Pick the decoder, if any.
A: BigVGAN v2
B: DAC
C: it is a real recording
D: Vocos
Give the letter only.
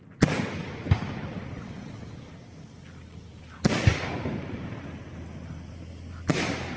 C